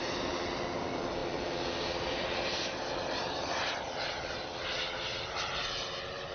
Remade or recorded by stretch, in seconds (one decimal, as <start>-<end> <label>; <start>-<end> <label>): 0.0-6.3 recorded

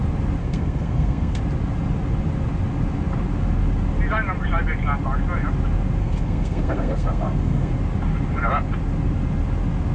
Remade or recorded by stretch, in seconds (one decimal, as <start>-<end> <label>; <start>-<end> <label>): 0.0-0.4 recorded; 0.4-1.4 remade; 1.4-6.0 recorded; 6.0-7.7 remade; 7.7-9.9 recorded

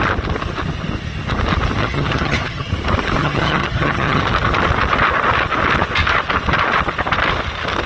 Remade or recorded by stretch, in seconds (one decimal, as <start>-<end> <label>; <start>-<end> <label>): 0.0-1.8 recorded; 1.8-2.7 remade; 2.7-3.2 recorded; 3.2-4.2 remade; 4.2-7.9 recorded

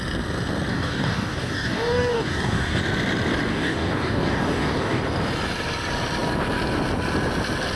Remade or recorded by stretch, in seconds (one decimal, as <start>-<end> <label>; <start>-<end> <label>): 0.0-0.7 recorded; 0.7-2.8 remade; 2.8-3.5 recorded; 3.5-5.0 remade; 5.0-7.8 recorded

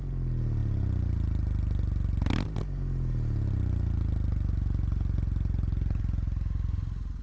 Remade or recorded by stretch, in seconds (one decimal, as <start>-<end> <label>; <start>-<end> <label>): 0.0-7.2 recorded

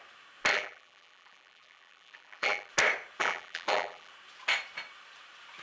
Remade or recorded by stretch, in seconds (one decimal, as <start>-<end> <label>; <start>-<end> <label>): 0.0-0.5 recorded; 0.5-2.7 remade; 2.7-3.2 recorded; 3.2-4.1 remade; 4.1-5.6 recorded

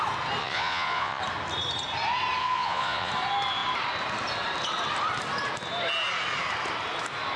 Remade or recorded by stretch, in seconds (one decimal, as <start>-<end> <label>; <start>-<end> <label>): 0.0-0.4 recorded; 0.4-1.2 remade; 1.2-2.4 recorded; 2.4-3.1 remade; 3.1-7.4 recorded